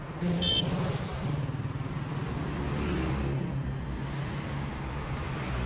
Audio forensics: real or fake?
real